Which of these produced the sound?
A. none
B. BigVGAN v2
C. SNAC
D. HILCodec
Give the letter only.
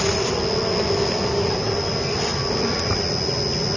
A